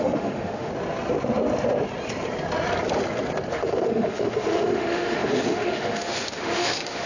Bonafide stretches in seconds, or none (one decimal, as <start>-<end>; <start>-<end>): 0.7-3.5